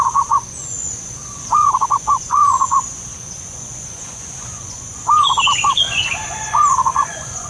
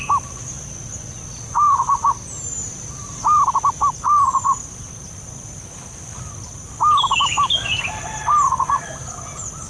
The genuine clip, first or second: second